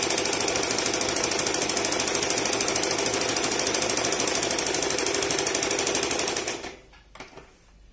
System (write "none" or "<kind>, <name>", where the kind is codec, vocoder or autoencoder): none